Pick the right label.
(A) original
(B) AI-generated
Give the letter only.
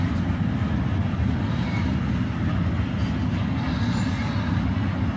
A